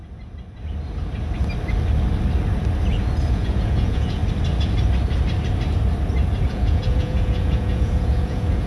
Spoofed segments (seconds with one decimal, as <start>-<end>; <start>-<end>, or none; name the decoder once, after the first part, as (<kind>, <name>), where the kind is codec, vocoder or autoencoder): 3.3-4.2 (vocoder, Vocos); 6.4-8.7